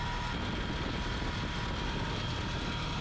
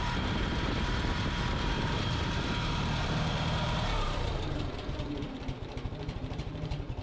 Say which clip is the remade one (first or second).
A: second